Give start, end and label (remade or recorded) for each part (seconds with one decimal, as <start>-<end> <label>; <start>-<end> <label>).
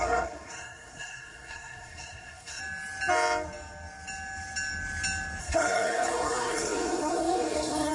0.0-2.6 remade; 2.6-5.4 recorded; 5.4-7.9 remade